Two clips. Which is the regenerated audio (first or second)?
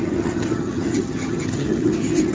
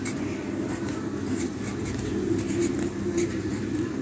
first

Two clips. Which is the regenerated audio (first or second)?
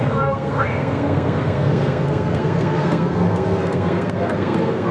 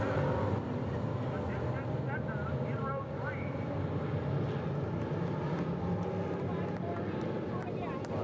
first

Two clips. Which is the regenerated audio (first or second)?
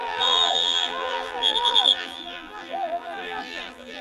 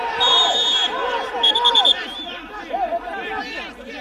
first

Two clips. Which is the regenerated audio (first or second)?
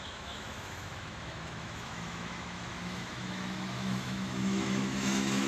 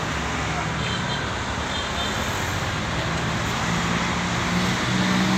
first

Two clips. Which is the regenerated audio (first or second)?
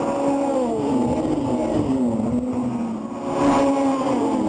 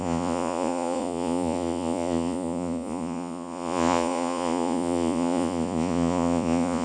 second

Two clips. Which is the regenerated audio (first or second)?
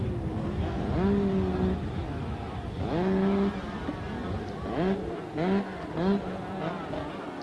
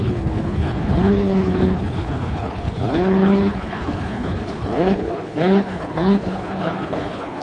second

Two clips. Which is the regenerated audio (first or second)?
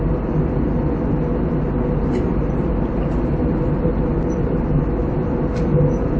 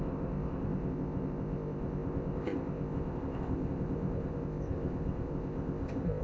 second